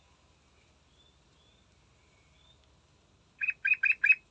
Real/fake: real